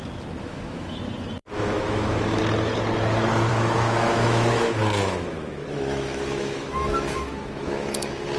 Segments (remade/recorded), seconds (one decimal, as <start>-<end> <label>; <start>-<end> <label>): 0.0-0.4 recorded; 0.4-1.0 remade; 1.0-1.4 recorded; 1.4-2.4 remade; 2.4-3.5 recorded; 3.5-8.4 remade